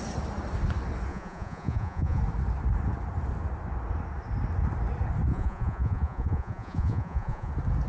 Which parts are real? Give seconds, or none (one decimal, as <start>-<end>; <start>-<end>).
0.0-1.1; 2.2-5.3; 7.5-7.9